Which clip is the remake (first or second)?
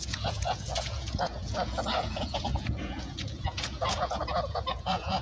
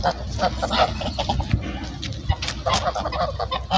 first